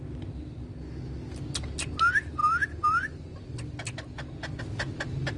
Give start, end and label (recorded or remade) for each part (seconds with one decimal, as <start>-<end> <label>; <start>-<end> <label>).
0.0-5.4 recorded